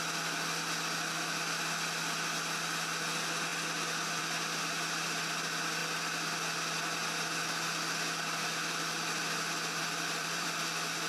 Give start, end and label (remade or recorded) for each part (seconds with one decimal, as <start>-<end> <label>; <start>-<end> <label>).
0.0-9.8 recorded; 9.8-10.5 remade; 10.5-11.1 recorded